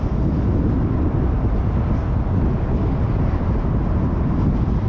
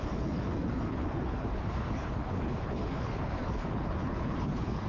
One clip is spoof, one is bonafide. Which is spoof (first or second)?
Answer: second